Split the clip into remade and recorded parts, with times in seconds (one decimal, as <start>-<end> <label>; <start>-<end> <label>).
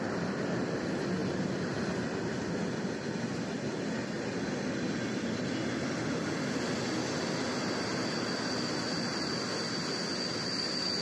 0.0-1.2 recorded; 1.2-2.5 remade; 2.5-11.0 recorded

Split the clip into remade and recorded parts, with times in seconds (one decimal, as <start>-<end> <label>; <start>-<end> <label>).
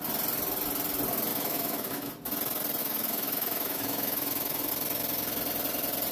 0.0-1.3 recorded; 1.3-2.1 remade; 2.1-2.8 recorded; 2.8-4.7 remade; 4.7-6.1 recorded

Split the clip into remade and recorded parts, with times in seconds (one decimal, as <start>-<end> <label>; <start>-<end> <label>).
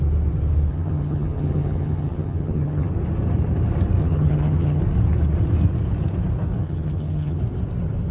0.0-0.7 recorded; 0.7-2.9 remade; 2.9-4.0 recorded; 4.0-4.8 remade; 4.8-6.6 recorded; 6.6-7.4 remade; 7.4-8.1 recorded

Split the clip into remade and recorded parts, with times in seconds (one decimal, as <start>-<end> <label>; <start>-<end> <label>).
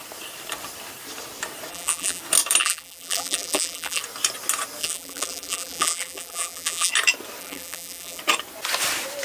0.0-1.7 recorded; 1.7-2.2 remade; 2.2-2.6 recorded; 2.6-4.0 remade; 4.0-4.8 recorded; 4.8-6.9 remade; 6.9-7.4 recorded; 7.4-8.2 remade; 8.2-9.2 recorded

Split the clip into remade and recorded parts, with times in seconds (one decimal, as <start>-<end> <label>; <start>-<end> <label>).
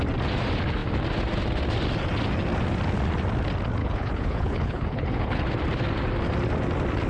0.0-3.8 recorded; 3.8-5.4 remade; 5.4-7.1 recorded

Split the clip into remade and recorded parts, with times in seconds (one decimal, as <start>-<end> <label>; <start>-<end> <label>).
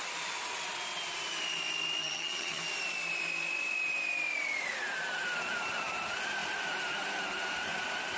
0.0-2.0 recorded; 2.0-2.6 remade; 2.6-8.2 recorded